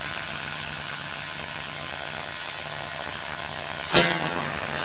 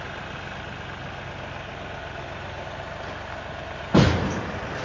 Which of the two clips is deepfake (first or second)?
first